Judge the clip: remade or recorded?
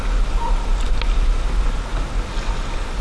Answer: recorded